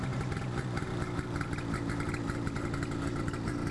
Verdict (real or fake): real